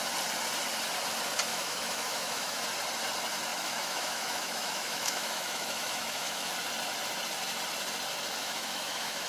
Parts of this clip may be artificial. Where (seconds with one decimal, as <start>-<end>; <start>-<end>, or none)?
1.5-2.6; 3.5-6.5; 8.4-9.3